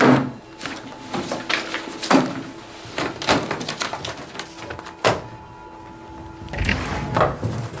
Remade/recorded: recorded